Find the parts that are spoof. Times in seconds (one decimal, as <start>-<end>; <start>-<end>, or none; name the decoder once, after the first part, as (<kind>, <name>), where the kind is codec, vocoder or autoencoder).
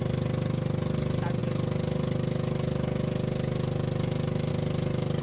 none